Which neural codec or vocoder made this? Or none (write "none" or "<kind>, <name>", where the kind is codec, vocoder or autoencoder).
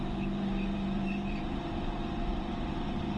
vocoder, BigVGAN v2